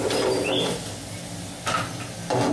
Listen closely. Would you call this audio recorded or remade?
recorded